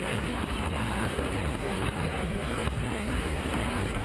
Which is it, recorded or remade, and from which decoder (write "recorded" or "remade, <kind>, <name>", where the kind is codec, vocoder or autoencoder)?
remade, codec, SNAC